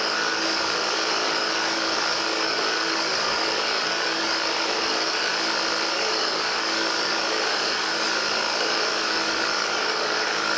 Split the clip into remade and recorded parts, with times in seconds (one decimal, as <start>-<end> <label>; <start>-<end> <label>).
0.0-5.3 remade; 5.3-5.9 recorded; 5.9-10.6 remade